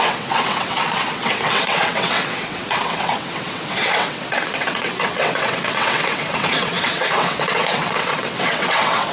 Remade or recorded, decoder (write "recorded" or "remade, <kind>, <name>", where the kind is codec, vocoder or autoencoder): remade, vocoder, WaveNeXt